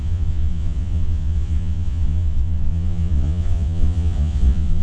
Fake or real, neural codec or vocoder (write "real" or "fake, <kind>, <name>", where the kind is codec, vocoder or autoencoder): fake, vocoder, Vocos